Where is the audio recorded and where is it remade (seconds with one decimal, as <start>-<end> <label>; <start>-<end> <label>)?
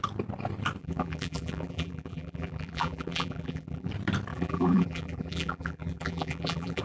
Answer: 0.0-0.8 recorded; 0.8-3.9 remade; 3.9-4.3 recorded; 4.3-6.8 remade